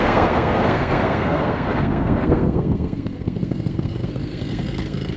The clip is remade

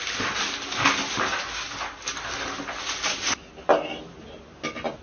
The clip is recorded